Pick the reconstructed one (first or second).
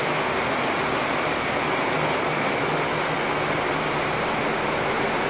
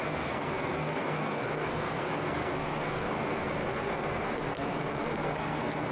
second